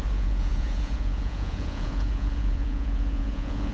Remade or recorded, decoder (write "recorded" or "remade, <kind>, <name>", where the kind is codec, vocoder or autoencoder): remade, vocoder, Vocos